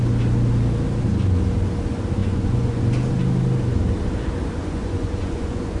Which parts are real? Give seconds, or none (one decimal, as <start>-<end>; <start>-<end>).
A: 0.0-2.2; 2.8-4.6